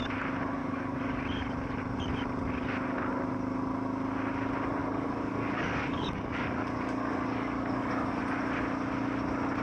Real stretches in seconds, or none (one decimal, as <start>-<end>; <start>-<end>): 0.0-0.6; 1.1-4.8; 8.2-9.6